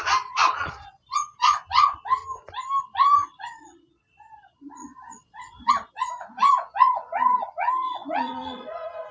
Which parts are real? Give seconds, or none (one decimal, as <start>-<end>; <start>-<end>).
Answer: 2.2-2.8